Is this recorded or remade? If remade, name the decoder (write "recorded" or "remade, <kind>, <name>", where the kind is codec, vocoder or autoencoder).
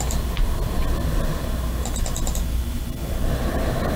recorded